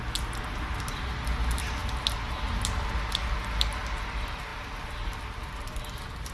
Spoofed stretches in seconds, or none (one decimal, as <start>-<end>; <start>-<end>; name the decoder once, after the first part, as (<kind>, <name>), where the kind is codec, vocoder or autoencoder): none